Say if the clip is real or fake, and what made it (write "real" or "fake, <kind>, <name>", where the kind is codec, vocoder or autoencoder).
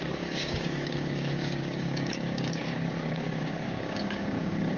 fake, codec, DAC